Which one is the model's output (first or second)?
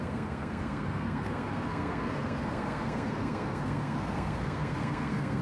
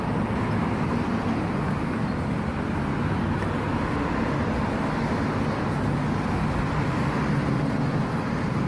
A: first